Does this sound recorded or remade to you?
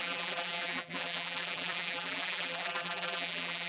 remade